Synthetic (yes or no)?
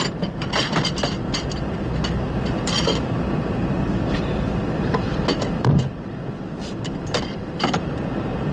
yes